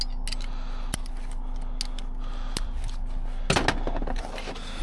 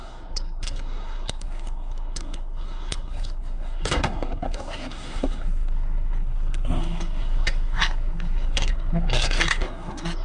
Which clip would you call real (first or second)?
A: first